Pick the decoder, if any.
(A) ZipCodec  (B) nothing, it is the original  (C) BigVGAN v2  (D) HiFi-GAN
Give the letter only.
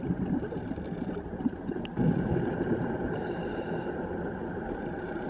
C